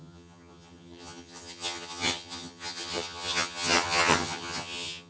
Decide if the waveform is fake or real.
fake